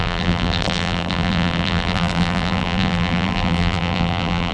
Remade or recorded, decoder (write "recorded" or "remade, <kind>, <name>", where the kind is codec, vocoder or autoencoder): remade, vocoder, BigVGAN v2